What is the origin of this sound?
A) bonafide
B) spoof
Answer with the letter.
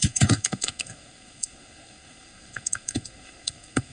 B